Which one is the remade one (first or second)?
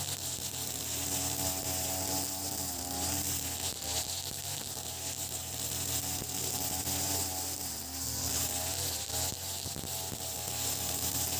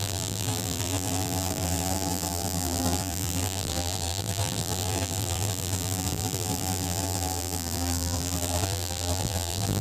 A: second